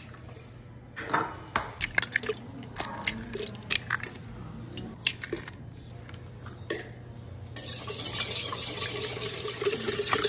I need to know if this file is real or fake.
real